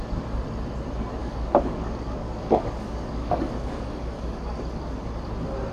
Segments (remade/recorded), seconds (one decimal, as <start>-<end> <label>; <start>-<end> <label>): 0.0-1.2 recorded; 1.2-4.6 remade; 4.6-5.7 recorded